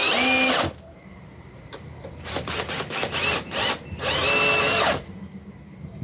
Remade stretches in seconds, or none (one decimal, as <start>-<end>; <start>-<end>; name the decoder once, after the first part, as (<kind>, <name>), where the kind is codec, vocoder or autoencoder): 0.0-4.2 (vocoder, BigVGAN v2); 4.8-6.0